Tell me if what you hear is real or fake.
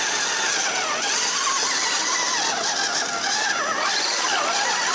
real